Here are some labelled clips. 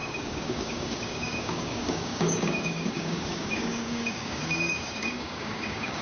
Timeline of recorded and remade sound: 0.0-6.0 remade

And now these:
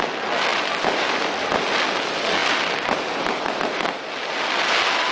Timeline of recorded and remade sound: 0.0-5.1 recorded

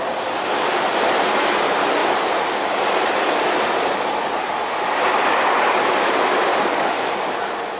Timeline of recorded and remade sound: 0.0-6.5 recorded; 6.5-7.1 remade; 7.1-7.8 recorded

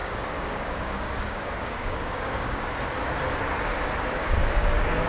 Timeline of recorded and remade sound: 0.0-2.6 remade; 2.6-4.2 recorded; 4.2-5.1 remade